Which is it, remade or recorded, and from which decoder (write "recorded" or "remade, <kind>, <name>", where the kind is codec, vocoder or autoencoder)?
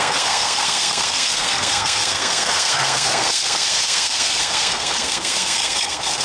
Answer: remade, codec, SNAC